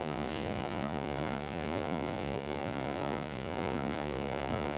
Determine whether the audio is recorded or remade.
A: remade